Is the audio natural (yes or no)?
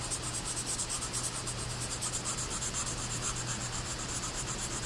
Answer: yes